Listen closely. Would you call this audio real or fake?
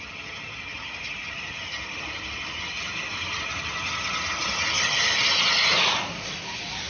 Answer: real